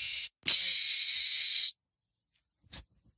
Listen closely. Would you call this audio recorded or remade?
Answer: recorded